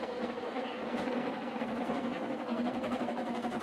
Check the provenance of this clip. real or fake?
fake